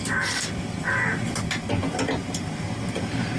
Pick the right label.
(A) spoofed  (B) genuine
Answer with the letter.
B